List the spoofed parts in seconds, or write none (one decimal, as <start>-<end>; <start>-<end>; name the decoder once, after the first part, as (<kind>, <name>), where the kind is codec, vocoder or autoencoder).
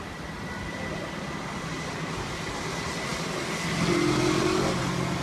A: none